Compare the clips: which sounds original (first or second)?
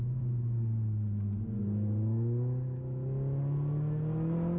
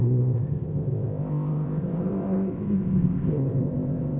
first